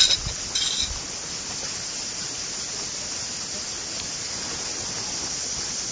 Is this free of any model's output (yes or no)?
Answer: yes